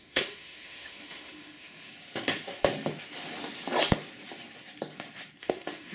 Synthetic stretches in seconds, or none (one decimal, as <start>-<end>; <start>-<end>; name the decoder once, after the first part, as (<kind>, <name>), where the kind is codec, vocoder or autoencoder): 0.0-1.9 (autoencoder, DAC-VAE); 5.4-5.9